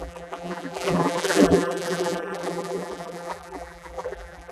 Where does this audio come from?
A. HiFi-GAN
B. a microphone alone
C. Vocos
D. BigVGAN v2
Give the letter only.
D